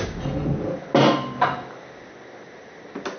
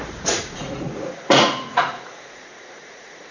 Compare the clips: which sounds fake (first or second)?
second